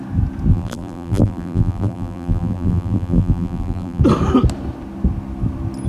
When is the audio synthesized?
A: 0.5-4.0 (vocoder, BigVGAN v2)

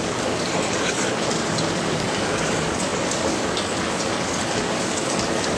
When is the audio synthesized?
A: 0.0-5.6 (codec, DAC)

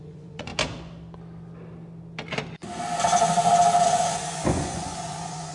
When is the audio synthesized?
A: 0.0-0.5 (vocoder, Vocos); 3.8-5.5

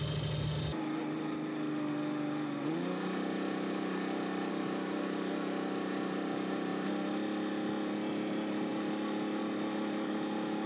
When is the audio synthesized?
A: none